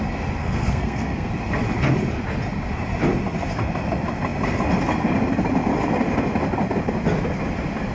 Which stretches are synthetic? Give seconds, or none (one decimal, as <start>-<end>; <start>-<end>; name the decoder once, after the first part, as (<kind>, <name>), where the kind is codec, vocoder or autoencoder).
0.4-1.3 (codec, SNAC)